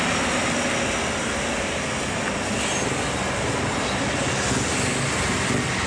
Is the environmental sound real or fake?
real